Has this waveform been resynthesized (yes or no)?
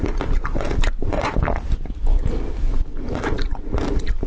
no